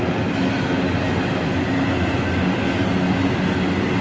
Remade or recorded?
recorded